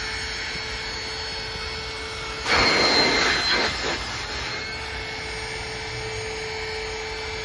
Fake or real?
real